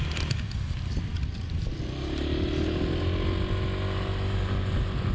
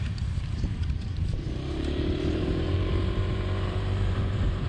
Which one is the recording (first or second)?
first